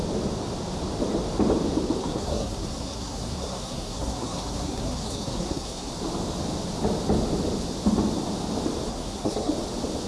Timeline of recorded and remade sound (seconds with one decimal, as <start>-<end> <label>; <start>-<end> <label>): 0.0-2.0 recorded; 2.0-5.9 remade; 5.9-8.9 recorded; 8.9-9.5 remade; 9.5-10.1 recorded